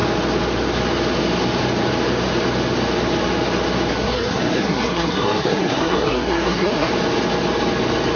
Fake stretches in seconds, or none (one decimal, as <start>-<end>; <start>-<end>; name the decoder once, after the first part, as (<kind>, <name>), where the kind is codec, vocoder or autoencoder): 3.9-6.9 (codec, SNAC)

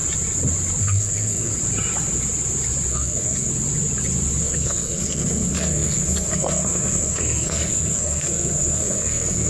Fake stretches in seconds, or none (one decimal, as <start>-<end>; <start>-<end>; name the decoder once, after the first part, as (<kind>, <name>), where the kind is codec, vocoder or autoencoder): 0.8-1.5 (codec, SNAC); 2.9-3.5; 4.4-9.5

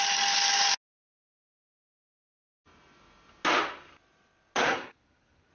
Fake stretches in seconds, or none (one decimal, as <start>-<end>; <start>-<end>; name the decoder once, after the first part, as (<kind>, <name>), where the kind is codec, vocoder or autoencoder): 4.6-5.5 (codec, SNAC)

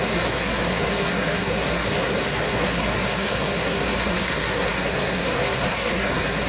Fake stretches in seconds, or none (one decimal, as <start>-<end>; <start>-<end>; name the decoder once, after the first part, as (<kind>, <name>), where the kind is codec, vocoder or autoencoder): 0.0-6.5 (codec, SNAC)

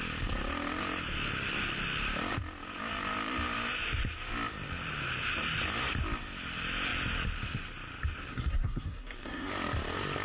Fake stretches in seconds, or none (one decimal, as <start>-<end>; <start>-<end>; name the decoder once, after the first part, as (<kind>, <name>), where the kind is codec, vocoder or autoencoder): 8.3-9.5 (codec, SNAC)

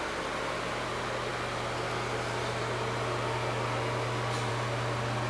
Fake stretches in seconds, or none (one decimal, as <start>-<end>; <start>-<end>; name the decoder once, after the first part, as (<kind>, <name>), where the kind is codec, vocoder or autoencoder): none